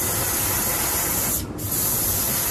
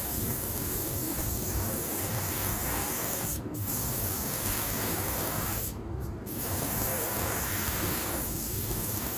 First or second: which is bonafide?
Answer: first